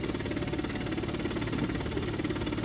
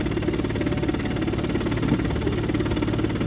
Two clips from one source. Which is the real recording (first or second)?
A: second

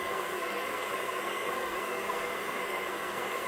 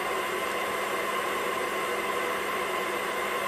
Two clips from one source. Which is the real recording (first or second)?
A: second